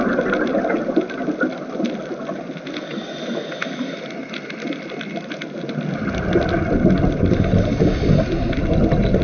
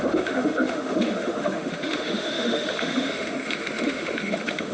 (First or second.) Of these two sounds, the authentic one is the first